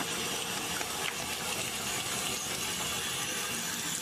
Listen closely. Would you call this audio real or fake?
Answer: real